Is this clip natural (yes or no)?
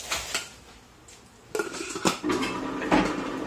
yes